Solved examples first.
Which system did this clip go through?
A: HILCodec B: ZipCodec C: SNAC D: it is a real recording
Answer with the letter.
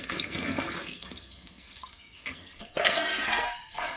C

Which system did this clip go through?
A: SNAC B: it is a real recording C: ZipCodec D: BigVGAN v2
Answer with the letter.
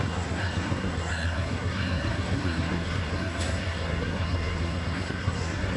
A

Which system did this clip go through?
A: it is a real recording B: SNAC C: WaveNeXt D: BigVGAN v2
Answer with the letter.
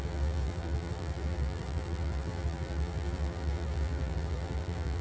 D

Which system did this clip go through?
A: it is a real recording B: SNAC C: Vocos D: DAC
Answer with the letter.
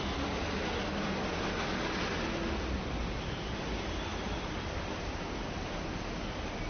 A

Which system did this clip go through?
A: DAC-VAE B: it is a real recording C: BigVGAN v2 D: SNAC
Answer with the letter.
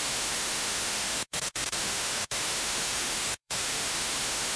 A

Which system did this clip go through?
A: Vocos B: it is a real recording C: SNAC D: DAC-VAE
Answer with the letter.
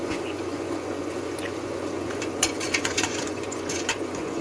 A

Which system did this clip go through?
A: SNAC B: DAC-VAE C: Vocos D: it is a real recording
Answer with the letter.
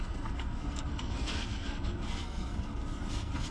A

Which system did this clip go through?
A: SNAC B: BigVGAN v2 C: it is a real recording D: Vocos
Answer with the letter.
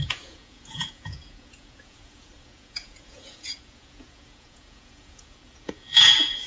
D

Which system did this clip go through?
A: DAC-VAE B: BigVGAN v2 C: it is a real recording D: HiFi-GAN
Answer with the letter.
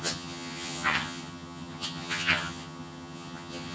D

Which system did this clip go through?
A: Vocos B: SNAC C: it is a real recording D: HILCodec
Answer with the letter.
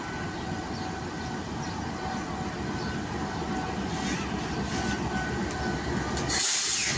C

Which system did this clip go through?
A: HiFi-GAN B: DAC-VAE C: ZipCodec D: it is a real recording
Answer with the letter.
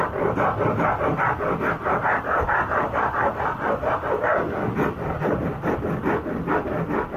D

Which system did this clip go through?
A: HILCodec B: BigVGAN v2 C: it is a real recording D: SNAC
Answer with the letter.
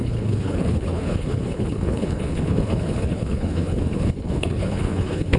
A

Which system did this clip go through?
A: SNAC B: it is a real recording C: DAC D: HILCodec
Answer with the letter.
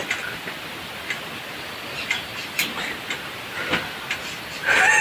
B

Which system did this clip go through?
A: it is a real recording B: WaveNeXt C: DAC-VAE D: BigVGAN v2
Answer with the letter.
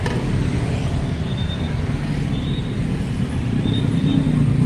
A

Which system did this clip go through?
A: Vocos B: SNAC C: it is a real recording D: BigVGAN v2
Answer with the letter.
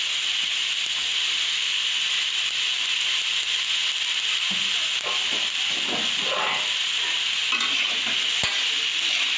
C